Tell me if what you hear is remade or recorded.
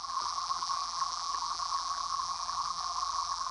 remade